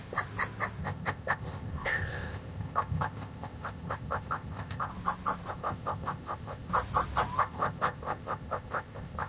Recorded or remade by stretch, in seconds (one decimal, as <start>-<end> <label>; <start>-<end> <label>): 0.0-0.8 recorded; 0.8-4.9 remade; 4.9-5.5 recorded; 5.5-6.7 remade; 6.7-7.4 recorded; 7.4-9.3 remade